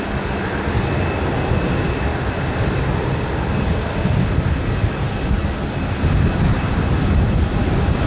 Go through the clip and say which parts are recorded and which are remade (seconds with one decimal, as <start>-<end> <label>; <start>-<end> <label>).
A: 0.0-8.1 recorded